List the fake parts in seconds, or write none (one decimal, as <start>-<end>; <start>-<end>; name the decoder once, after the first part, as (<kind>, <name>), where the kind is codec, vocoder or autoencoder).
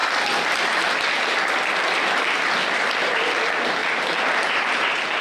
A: 3.8-5.2 (vocoder, BigVGAN v2)